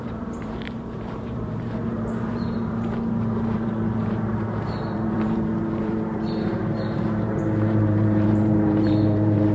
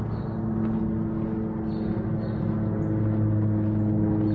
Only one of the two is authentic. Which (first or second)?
second